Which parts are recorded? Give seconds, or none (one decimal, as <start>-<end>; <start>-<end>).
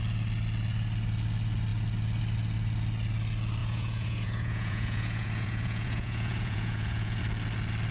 0.0-3.6; 7.2-7.9